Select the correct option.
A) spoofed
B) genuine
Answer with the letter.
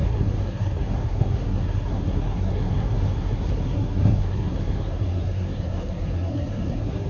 A